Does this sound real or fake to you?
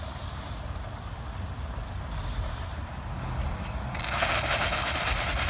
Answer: real